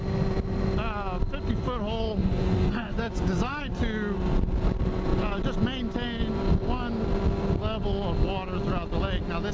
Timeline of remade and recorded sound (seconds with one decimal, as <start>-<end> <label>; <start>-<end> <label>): 0.0-2.2 recorded; 2.2-3.7 remade; 3.7-9.5 recorded